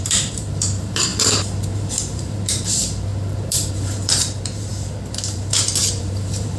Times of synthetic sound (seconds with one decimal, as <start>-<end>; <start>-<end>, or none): 0.0-6.6